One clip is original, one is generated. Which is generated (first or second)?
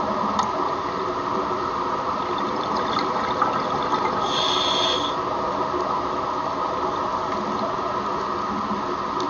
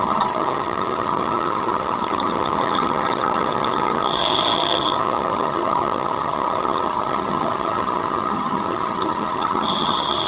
second